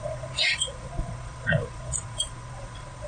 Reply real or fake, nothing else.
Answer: fake